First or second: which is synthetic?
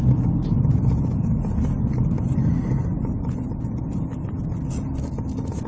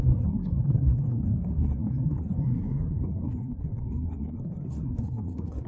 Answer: second